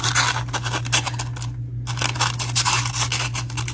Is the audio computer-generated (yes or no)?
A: no